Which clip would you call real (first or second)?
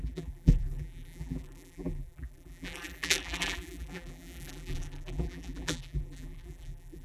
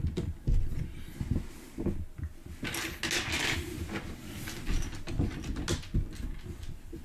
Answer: second